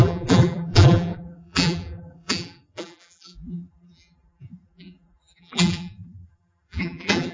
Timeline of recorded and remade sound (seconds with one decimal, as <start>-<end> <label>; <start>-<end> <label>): 0.0-7.3 remade